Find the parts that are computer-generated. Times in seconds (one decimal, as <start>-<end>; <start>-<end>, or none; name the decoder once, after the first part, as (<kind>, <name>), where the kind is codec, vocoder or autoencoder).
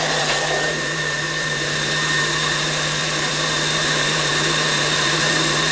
0.0-5.7 (vocoder, BigVGAN v2)